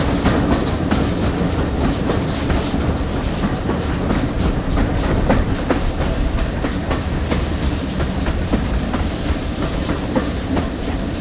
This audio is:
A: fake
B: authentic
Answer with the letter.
B